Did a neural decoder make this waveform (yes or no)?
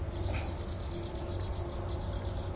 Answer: no